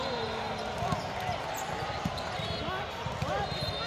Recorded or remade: recorded